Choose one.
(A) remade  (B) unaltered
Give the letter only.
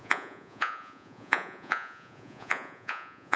A